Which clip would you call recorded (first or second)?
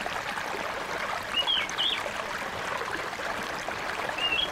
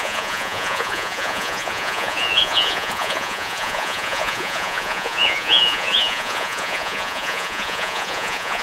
first